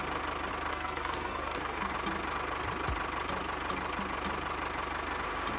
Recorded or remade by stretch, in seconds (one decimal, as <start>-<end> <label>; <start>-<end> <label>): 0.0-0.7 recorded; 0.7-1.9 remade; 1.9-5.6 recorded